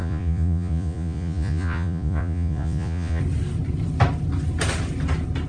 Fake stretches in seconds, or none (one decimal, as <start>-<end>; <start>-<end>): 0.0-3.2

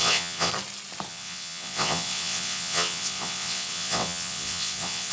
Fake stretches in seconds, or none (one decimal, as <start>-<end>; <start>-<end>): 0.0-0.5; 1.1-5.1

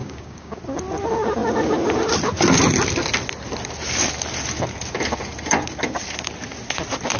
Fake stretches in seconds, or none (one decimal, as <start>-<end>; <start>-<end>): 0.0-0.6

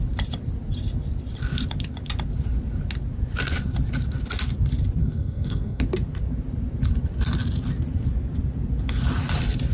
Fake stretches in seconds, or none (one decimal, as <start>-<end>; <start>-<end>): 5.0-5.8

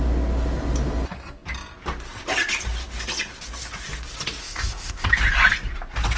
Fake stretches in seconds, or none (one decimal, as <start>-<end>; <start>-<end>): 4.4-5.1

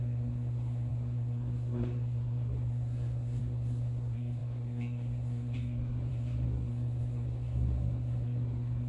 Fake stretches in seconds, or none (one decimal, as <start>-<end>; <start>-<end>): 0.0-8.9